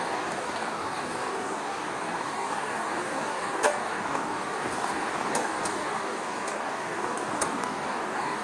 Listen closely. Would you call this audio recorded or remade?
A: remade